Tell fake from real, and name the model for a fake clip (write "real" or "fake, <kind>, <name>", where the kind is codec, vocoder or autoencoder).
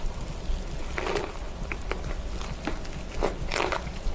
real